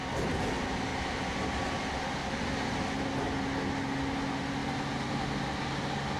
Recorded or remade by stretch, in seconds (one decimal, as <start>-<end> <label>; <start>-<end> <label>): 0.0-2.2 recorded; 2.2-2.8 remade; 2.8-4.6 recorded; 4.6-5.2 remade; 5.2-6.2 recorded